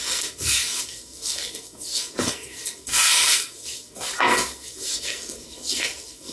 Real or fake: fake